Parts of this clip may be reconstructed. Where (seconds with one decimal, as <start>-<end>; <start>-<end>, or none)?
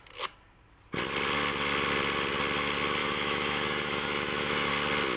3.0-4.7